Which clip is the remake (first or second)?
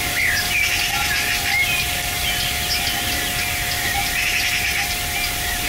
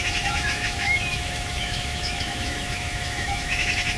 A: second